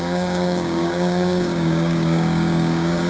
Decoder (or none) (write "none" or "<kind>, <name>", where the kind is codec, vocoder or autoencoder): codec, DAC